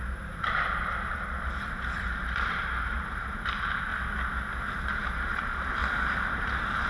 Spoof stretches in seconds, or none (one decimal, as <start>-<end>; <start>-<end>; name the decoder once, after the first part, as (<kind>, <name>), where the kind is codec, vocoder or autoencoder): 0.0-3.9 (vocoder, BigVGAN v2); 4.9-5.8; 6.3-6.9